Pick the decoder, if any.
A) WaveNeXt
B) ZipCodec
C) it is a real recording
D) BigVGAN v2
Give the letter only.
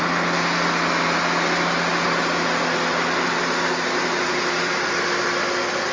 C